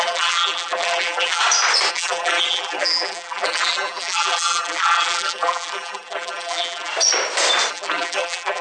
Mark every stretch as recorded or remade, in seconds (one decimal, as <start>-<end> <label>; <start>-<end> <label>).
0.0-1.4 remade; 1.4-1.9 recorded; 1.9-6.9 remade; 6.9-7.7 recorded; 7.7-8.6 remade